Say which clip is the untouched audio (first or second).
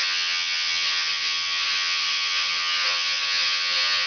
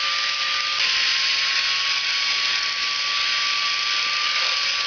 second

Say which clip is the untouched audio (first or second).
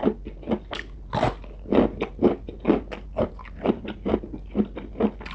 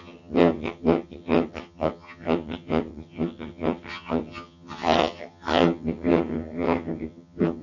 first